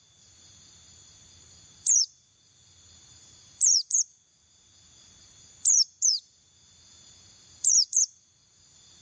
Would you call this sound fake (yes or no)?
yes